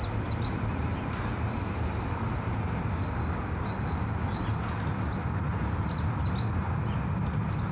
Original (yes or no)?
yes